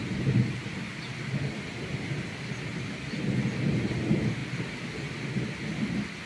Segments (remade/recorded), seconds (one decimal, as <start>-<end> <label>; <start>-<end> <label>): 0.0-6.3 recorded